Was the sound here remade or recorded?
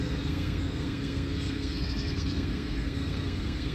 remade